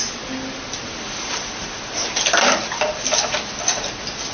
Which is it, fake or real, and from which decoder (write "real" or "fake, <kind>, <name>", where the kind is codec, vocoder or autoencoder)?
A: real